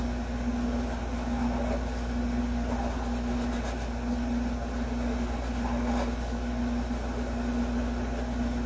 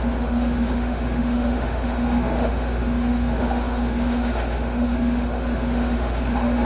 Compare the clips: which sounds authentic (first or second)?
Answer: first